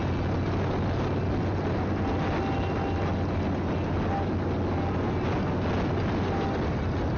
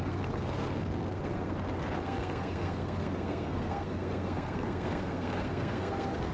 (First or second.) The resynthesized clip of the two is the second